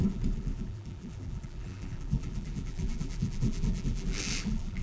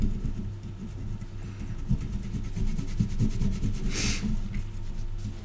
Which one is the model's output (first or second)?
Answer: first